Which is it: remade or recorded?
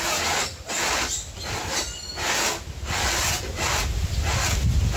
recorded